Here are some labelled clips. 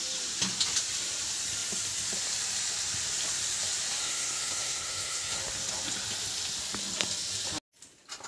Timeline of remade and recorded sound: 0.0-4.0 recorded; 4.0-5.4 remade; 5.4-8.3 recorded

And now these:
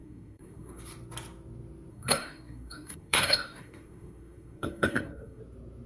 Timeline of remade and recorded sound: 0.0-0.8 remade; 0.8-1.9 recorded; 1.9-5.4 remade; 5.4-5.9 recorded